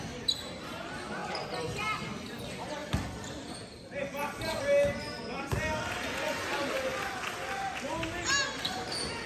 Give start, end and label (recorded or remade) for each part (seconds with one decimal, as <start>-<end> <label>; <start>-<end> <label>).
0.0-2.8 recorded; 2.8-4.6 remade; 4.6-9.3 recorded